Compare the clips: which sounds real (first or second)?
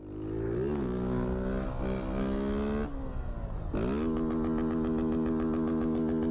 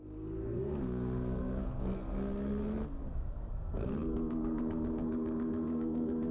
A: first